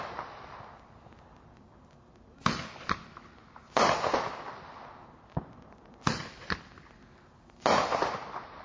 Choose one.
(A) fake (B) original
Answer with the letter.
B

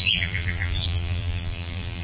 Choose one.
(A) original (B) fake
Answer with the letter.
B